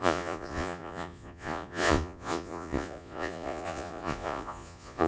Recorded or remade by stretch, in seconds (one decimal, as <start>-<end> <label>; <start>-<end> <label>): 0.0-5.1 remade